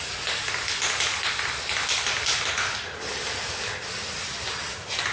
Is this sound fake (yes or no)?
no